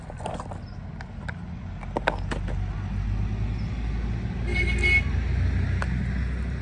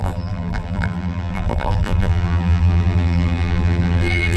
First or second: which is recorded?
first